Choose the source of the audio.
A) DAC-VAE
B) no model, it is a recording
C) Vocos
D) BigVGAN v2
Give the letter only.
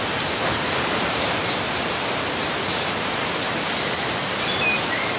D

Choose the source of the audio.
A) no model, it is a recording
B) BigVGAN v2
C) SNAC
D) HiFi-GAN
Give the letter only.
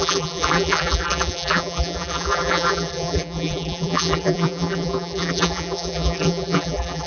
B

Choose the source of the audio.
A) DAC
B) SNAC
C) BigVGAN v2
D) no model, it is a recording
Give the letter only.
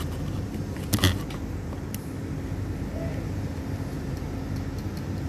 D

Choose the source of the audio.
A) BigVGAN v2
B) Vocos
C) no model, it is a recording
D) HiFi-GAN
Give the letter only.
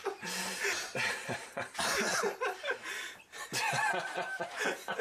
A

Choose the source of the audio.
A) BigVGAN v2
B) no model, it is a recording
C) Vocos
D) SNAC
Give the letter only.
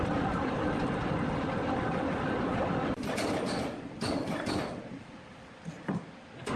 B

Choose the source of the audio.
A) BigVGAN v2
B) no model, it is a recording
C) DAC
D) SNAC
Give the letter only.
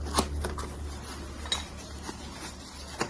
B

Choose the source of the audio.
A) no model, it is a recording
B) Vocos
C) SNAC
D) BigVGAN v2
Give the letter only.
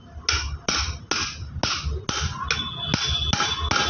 A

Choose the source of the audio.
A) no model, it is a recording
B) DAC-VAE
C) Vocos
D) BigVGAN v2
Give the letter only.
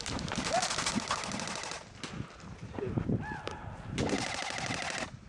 A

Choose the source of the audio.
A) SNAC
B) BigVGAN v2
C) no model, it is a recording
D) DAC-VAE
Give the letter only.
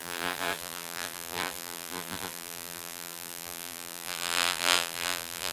B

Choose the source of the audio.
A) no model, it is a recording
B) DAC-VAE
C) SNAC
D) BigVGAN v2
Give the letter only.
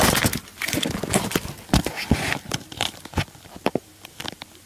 D